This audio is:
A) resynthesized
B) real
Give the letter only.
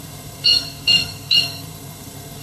A